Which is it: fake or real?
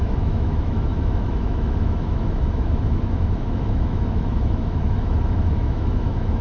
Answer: fake